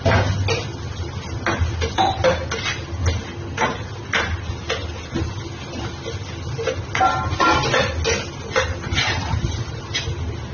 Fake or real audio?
real